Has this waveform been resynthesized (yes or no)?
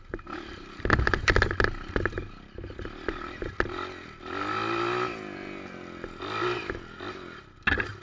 no